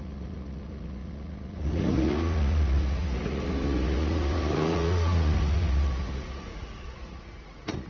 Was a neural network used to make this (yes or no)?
yes